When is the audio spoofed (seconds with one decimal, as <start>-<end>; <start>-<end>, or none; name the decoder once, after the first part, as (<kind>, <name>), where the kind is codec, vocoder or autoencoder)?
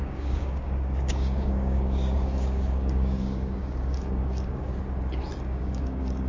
0.0-4.7 (codec, DAC); 5.4-6.3